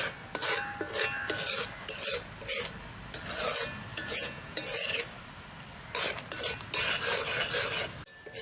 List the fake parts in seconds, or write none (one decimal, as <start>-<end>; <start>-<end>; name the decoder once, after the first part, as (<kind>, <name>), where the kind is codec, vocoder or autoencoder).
3.9-4.6 (vocoder, Vocos)